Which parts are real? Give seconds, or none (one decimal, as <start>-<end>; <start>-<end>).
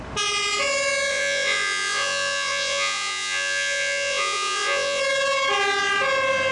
0.0-1.1; 5.0-6.5